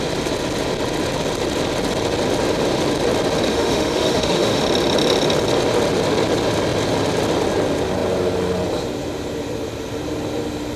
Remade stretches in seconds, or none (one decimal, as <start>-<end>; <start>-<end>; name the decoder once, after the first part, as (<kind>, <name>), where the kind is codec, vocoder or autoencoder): 3.5-4.6 (autoencoder, DAC-VAE)